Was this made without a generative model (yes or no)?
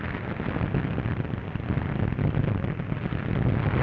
yes